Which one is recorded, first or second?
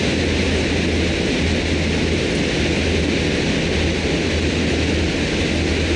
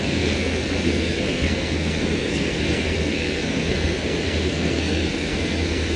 first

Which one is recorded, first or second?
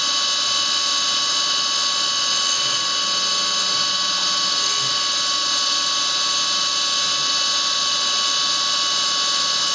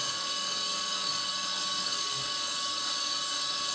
first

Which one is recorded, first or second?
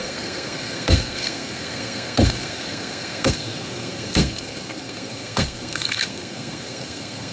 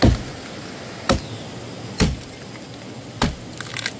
second